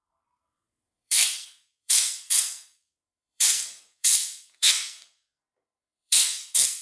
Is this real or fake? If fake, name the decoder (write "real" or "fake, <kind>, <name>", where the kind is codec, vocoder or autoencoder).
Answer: fake, codec, SNAC